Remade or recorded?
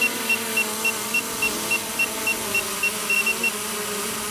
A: recorded